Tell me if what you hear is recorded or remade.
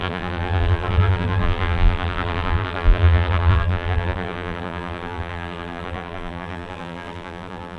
remade